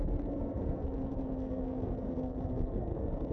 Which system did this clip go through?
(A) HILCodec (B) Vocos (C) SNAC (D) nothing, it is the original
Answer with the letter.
C